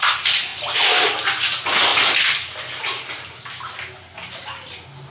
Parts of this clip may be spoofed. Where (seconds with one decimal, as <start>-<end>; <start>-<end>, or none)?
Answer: none